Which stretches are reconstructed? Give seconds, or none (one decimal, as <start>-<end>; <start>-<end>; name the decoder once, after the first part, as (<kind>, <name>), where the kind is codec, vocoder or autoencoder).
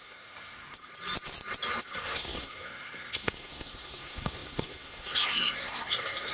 0.0-0.9 (codec, SNAC); 1.8-6.3